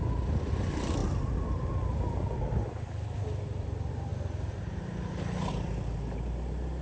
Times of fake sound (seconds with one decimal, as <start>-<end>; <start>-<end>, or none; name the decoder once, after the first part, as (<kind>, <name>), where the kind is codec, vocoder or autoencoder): 0.0-1.0 (vocoder, BigVGAN v2); 1.7-6.8